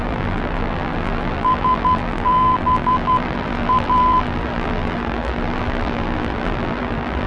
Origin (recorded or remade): remade